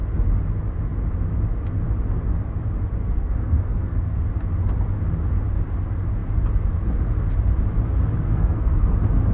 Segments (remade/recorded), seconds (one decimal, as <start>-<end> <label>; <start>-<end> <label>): 0.0-3.0 recorded; 3.0-4.2 remade; 4.2-8.2 recorded; 8.2-8.9 remade; 8.9-9.3 recorded